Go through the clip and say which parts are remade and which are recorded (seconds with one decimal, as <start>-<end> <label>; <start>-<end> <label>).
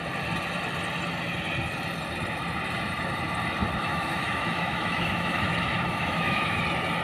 0.0-3.8 recorded; 3.8-6.6 remade; 6.6-7.0 recorded